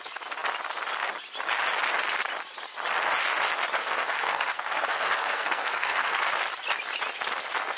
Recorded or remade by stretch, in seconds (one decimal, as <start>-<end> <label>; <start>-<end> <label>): 0.0-3.8 recorded; 3.8-6.2 remade; 6.2-7.8 recorded